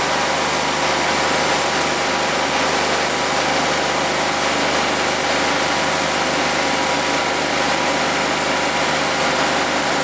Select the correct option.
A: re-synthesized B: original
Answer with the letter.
B